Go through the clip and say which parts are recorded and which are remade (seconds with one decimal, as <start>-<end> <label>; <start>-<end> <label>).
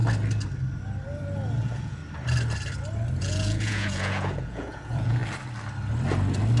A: 0.0-1.6 recorded; 1.6-2.0 remade; 2.0-3.2 recorded; 3.2-5.2 remade; 5.2-6.6 recorded